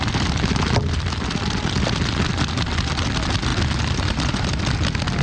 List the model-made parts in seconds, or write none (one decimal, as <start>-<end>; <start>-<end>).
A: none